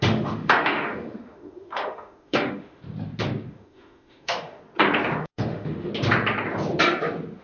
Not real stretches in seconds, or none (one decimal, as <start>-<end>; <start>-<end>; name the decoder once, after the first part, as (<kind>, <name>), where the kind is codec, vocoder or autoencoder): 0.0-2.8 (autoencoder, DAC-VAE); 3.5-4.6; 5.2-5.9